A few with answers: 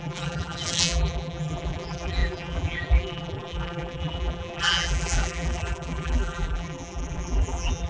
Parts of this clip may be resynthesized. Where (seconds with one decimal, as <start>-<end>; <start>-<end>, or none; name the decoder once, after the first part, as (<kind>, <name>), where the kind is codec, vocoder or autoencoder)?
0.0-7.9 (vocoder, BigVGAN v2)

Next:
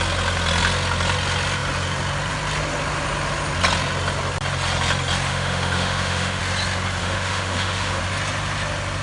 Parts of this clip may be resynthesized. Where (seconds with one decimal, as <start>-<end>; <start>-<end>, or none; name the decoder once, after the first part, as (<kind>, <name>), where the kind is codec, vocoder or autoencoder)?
5.3-6.4 (autoencoder, DAC-VAE); 7.0-8.0

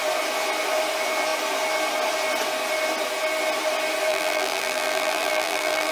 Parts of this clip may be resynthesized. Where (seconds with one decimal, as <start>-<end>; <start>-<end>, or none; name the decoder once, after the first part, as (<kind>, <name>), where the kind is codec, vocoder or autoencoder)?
4.1-5.9 (vocoder, BigVGAN v2)

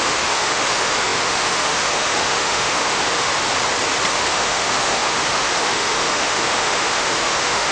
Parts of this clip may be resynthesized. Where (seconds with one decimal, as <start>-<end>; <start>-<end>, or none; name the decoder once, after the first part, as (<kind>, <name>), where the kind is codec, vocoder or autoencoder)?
0.0-3.3 (autoencoder, DAC-VAE); 4.1-7.7

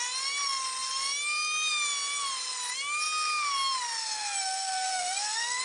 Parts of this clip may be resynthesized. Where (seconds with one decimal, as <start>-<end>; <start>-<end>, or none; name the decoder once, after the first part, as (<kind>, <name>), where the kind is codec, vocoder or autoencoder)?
4.0-5.6 (codec, SNAC)

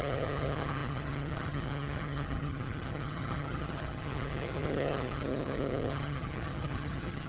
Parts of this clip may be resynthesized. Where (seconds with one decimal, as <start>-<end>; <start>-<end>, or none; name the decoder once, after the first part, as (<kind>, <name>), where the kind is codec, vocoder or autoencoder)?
0.0-7.3 (vocoder, HiFi-GAN)